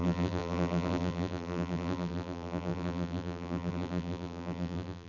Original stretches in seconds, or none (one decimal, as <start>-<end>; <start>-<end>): none